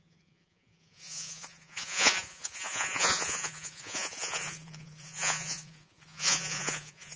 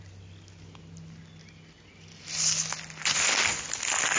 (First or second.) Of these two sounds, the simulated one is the first